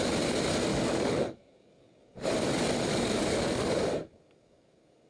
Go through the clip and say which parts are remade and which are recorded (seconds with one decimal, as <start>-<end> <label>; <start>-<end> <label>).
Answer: 0.0-0.7 recorded; 0.7-2.3 remade; 2.3-2.9 recorded; 2.9-5.1 remade